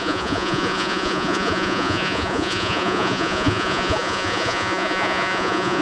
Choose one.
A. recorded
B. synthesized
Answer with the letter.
B